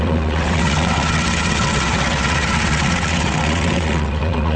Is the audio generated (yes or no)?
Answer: yes